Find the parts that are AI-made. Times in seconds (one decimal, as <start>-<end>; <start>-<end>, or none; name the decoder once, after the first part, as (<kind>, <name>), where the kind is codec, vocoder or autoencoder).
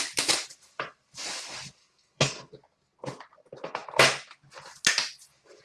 1.8-2.5 (codec, SNAC)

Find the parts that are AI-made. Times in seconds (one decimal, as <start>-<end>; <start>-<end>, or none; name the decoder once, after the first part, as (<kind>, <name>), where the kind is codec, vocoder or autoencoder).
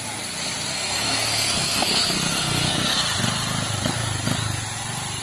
0.7-3.0 (codec, SNAC)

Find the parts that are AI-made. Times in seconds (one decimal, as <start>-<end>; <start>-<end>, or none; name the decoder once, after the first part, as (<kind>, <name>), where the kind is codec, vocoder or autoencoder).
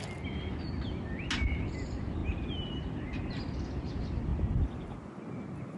none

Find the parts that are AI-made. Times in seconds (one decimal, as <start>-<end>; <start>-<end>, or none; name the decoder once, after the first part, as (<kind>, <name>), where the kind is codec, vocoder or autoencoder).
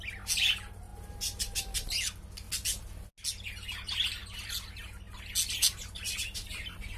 none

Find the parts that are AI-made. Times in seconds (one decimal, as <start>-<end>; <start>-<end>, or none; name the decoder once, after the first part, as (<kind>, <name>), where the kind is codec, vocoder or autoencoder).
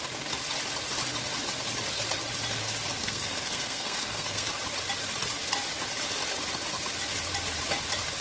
3.0-4.5 (codec, SNAC)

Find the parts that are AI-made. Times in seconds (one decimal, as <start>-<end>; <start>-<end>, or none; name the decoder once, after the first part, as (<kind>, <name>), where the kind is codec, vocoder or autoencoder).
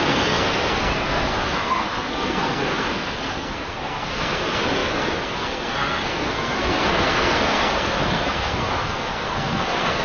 0.0-10.0 (codec, SNAC)